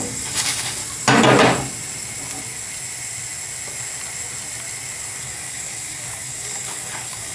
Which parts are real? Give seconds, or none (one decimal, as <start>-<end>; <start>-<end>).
0.8-5.2